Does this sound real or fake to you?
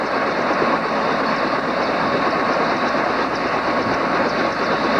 real